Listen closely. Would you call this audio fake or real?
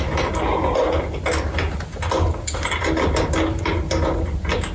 real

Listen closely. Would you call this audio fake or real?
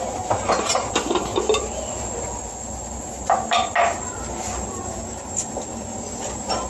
real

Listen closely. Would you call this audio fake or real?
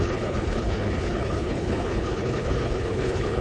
fake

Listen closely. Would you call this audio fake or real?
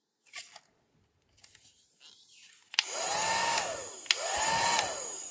real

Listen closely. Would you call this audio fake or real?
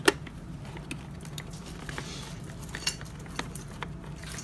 real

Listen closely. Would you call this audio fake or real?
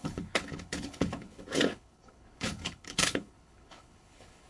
fake